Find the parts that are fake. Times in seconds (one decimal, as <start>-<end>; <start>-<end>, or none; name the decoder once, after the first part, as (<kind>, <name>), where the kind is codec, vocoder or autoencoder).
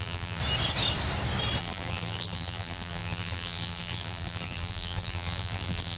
0.0-0.4 (vocoder, BigVGAN v2); 1.6-6.0